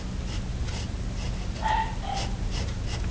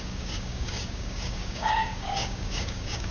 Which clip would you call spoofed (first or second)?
second